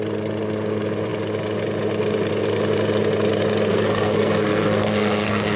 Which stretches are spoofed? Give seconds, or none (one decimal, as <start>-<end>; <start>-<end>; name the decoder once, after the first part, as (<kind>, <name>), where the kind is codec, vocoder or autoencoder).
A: 3.7-5.6 (codec, SNAC)